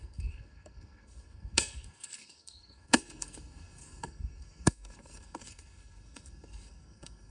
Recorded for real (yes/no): no